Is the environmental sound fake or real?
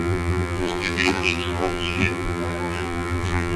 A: fake